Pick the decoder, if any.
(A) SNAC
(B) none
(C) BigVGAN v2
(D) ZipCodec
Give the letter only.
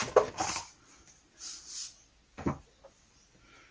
B